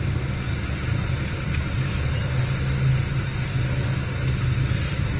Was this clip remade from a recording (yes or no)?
no